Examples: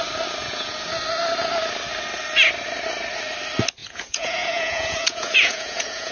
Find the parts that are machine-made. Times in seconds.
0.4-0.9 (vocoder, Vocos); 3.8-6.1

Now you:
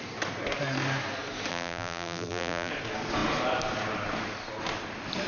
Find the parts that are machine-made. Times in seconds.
1.5-2.7 (vocoder, BigVGAN v2)

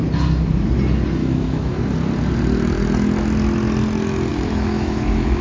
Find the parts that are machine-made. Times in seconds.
1.2-1.8 (autoencoder, DAC-VAE); 4.3-5.4